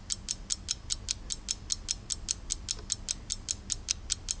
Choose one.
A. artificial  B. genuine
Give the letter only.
B